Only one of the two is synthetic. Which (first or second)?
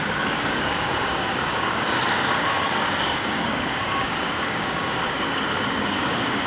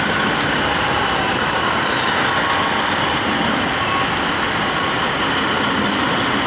first